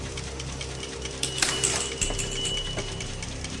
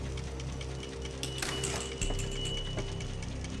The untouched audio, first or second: second